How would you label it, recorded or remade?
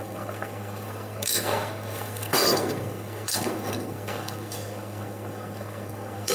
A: remade